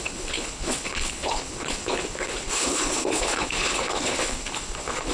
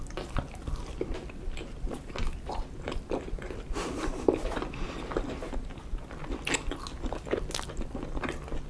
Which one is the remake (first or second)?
first